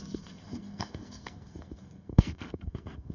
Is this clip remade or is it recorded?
remade